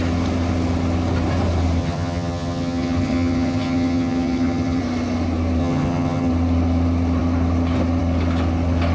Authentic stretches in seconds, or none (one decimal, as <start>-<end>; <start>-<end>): 0.0-1.8; 4.8-5.6; 6.3-8.9